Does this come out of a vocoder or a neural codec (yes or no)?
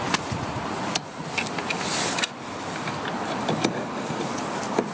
no